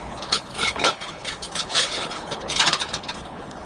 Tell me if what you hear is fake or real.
fake